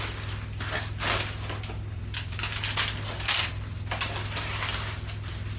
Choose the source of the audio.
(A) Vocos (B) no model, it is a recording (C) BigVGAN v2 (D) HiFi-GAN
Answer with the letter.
B